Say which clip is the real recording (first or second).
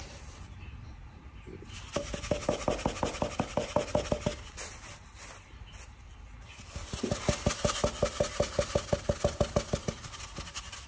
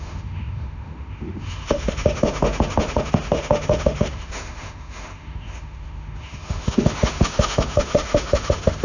first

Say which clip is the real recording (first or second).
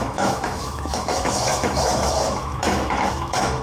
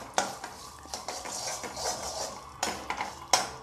second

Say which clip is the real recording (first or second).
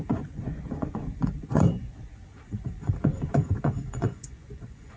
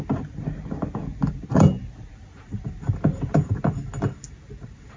second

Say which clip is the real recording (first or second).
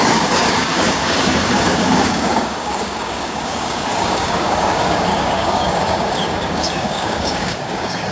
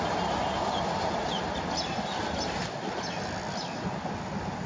second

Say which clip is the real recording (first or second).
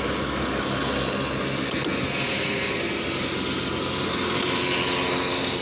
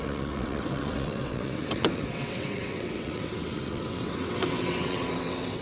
first